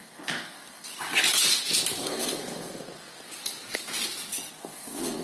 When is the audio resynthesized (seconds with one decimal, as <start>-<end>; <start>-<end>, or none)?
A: 0.0-0.9; 2.0-3.3; 4.5-5.2